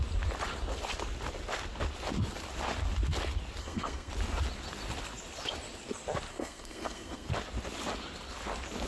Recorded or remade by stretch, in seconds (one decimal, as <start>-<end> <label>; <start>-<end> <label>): 0.0-3.6 recorded; 3.6-4.1 remade; 4.1-6.3 recorded; 6.3-7.3 remade; 7.3-8.9 recorded